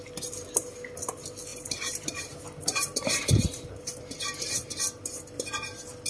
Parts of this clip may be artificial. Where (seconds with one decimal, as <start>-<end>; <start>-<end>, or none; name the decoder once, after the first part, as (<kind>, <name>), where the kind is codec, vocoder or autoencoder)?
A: 1.5-4.7 (vocoder, BigVGAN v2)